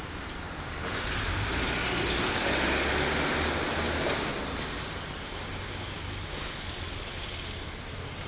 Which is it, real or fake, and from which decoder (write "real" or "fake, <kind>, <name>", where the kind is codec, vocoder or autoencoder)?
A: real